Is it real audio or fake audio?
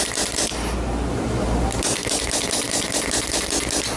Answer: real